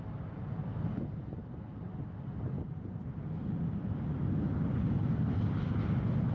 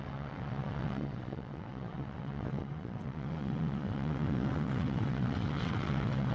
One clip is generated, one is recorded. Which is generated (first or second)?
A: second